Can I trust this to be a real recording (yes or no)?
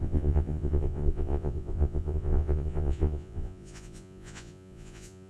no